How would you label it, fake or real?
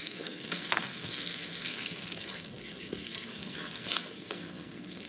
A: fake